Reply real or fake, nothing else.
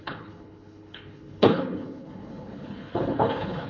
fake